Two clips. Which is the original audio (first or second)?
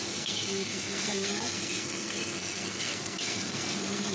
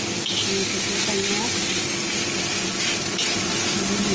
second